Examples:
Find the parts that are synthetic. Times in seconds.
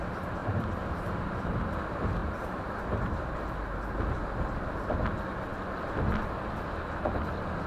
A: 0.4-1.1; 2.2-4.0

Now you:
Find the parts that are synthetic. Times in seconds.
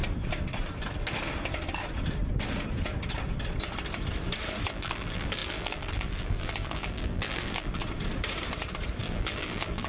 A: 4.7-7.8; 9.0-9.9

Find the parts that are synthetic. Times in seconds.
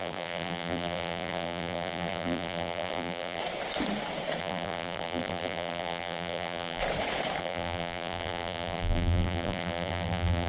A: 0.0-3.4; 4.4-6.8; 7.4-10.5